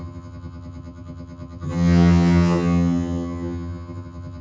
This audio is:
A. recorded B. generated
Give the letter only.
B